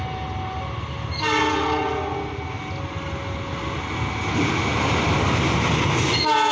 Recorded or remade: recorded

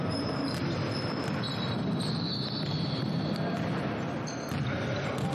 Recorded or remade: recorded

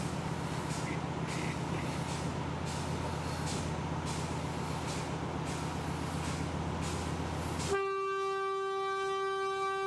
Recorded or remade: recorded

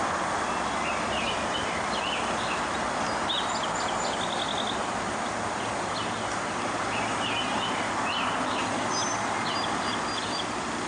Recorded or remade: recorded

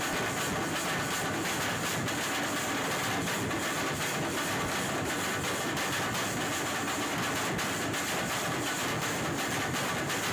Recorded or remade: recorded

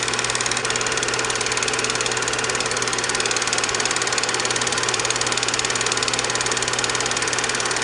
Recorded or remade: remade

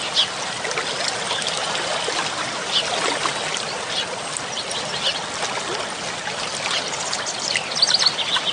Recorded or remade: recorded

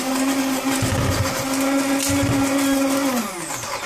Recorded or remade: recorded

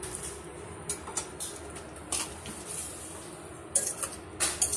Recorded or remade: recorded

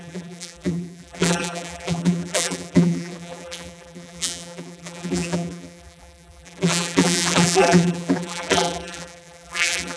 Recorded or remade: remade